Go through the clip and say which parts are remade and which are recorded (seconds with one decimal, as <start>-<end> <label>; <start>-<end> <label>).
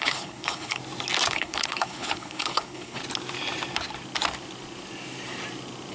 0.0-0.8 remade; 0.8-1.3 recorded; 1.3-3.0 remade; 3.0-5.9 recorded